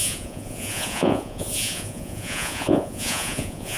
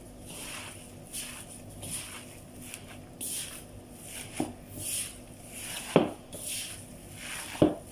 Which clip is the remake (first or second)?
first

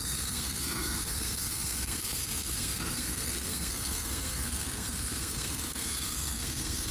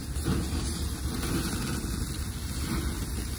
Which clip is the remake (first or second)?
first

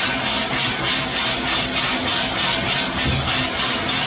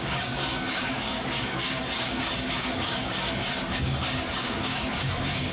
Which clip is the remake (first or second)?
second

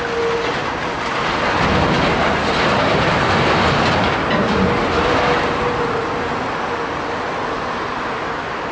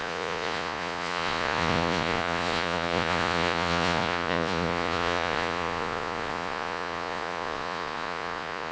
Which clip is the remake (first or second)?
second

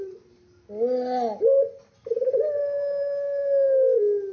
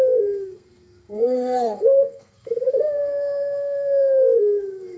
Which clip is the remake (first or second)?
second